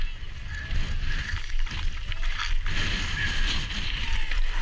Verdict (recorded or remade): recorded